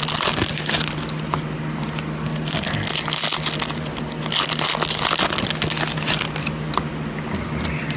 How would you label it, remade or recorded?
recorded